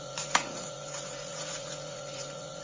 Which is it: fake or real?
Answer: fake